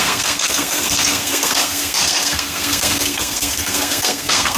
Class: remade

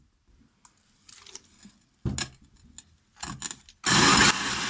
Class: recorded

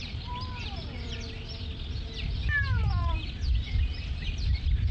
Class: recorded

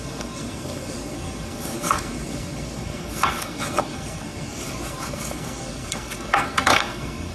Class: remade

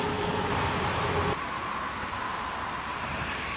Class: recorded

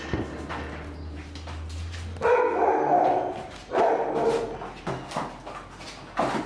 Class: recorded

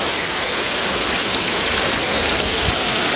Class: recorded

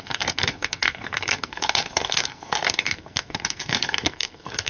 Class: remade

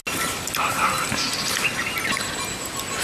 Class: recorded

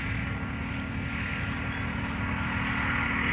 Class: recorded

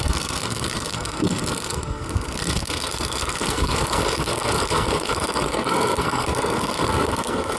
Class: remade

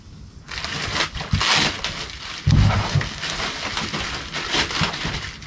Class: recorded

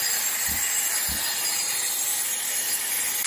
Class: recorded